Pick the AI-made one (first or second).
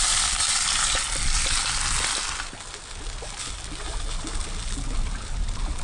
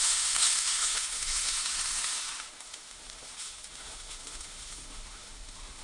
second